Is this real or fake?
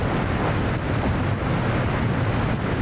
real